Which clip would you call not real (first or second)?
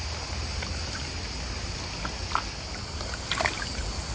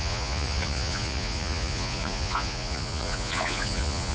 second